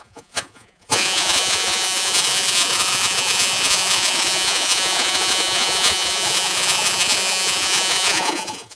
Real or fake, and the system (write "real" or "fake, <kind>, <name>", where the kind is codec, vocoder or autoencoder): fake, vocoder, Vocos